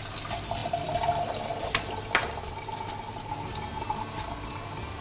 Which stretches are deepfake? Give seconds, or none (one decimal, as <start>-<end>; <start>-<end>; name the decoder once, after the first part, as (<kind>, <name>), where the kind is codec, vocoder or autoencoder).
none